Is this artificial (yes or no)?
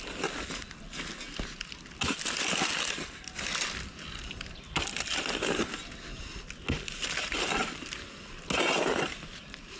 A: no